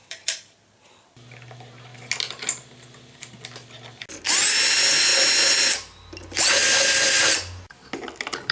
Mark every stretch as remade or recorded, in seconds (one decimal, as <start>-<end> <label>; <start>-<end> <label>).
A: 0.0-0.7 remade; 0.7-8.5 recorded